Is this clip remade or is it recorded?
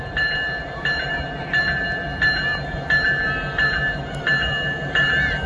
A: recorded